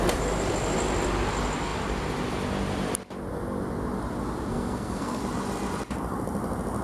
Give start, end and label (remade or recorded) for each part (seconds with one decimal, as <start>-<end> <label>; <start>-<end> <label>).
0.0-4.5 recorded; 4.5-5.2 remade; 5.2-6.8 recorded